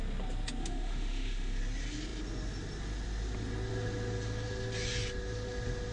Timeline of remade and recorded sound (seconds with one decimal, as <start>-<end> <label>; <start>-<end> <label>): 0.0-0.6 recorded; 0.6-1.6 remade; 1.6-5.9 recorded